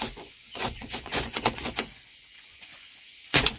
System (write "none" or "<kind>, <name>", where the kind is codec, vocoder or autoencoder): vocoder, Vocos